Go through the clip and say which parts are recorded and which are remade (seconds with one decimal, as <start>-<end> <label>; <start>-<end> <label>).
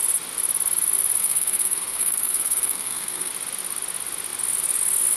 0.0-1.2 recorded; 1.2-3.3 remade; 3.3-5.2 recorded